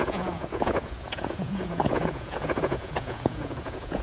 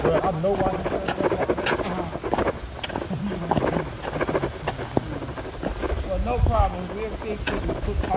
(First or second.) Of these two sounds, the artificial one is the first